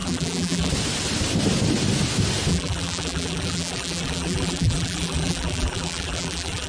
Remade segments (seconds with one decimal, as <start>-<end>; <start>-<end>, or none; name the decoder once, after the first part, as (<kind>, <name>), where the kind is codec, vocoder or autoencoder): 0.0-0.7 (vocoder, BigVGAN v2); 2.5-6.7